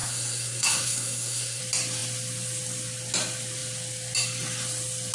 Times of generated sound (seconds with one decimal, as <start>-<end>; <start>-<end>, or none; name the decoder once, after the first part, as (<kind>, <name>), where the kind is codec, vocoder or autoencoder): 0.0-1.6 (codec, SNAC)